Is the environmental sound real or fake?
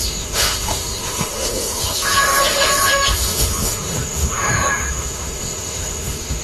fake